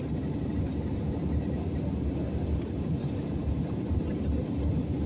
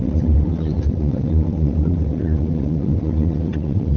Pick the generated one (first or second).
second